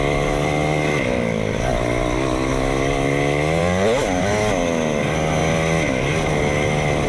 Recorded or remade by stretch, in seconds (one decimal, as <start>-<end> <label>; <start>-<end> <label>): 0.0-7.1 recorded